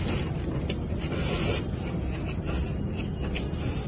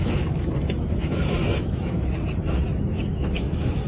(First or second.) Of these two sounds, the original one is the first